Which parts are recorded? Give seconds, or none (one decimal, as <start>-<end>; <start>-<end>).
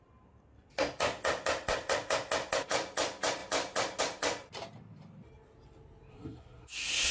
0.0-6.1